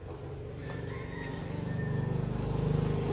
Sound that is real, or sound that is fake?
real